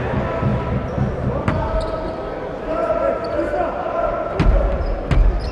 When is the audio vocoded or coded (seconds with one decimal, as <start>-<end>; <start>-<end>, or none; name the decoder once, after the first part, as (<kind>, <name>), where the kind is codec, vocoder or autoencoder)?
none